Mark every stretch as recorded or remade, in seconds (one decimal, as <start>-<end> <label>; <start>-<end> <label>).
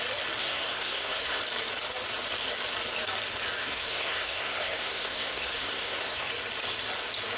0.0-0.4 recorded; 0.4-1.4 remade; 1.4-3.6 recorded; 3.6-6.3 remade; 6.3-7.4 recorded